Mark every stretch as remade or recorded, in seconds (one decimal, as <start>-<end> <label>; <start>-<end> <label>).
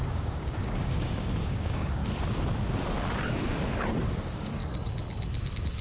0.0-2.0 remade; 2.0-4.1 recorded; 4.1-4.6 remade; 4.6-5.8 recorded